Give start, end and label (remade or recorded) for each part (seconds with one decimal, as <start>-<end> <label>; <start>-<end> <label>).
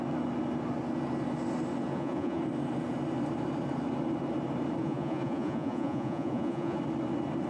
0.0-1.9 recorded; 1.9-2.4 remade; 2.4-4.8 recorded; 4.8-6.8 remade; 6.8-7.5 recorded